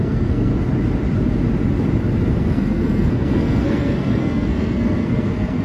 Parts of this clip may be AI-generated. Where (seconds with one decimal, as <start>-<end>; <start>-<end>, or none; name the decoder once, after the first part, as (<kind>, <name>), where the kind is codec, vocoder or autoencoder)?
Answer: 0.0-0.5 (codec, SNAC); 2.3-5.6